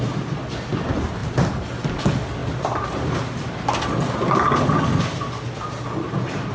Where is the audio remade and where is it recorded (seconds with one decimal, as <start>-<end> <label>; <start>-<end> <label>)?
0.0-6.5 recorded